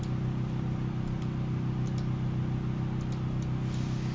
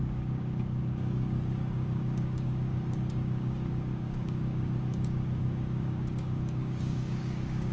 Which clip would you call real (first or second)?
first